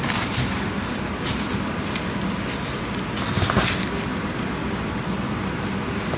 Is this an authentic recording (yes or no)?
yes